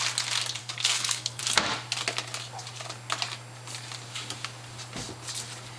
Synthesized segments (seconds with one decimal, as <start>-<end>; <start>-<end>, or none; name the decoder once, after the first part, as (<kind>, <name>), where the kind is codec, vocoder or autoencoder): 0.6-1.4 (codec, SNAC)